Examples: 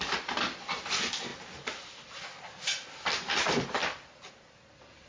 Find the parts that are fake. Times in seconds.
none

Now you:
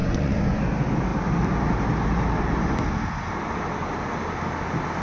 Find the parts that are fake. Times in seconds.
0.0-0.6 (vocoder, Vocos)

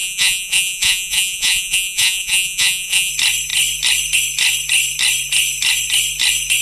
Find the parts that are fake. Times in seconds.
0.0-3.1 (vocoder, Vocos)

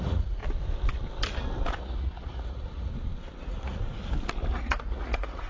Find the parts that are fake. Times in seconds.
0.0-0.4 (vocoder, Vocos); 1.7-2.9; 3.4-3.8; 4.5-5.5

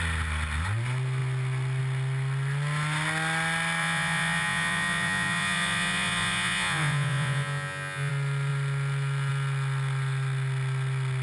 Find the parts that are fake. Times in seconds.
3.8-8.1 (vocoder, Vocos)

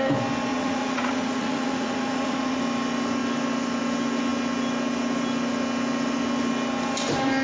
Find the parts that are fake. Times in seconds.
0.5-2.6 (vocoder, Vocos)